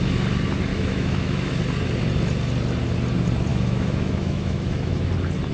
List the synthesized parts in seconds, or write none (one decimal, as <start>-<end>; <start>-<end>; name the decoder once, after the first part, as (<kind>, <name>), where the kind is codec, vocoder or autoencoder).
0.7-1.5 (autoencoder, DAC-VAE); 3.5-5.1